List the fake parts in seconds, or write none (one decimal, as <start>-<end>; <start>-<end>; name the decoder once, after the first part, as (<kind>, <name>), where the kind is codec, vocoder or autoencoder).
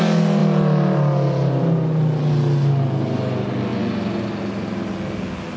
none